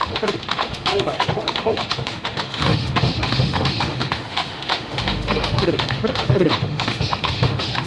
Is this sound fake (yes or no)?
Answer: yes